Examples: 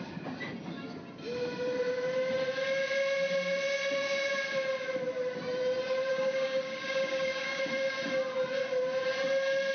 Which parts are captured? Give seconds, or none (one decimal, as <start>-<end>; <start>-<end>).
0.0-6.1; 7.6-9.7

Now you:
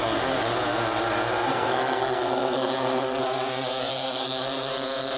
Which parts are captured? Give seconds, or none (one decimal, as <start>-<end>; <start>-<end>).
0.0-1.5; 3.2-3.9; 4.7-5.2

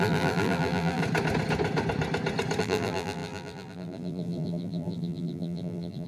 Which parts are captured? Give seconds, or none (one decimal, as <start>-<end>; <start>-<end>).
1.0-2.6